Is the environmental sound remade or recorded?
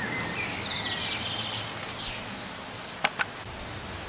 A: recorded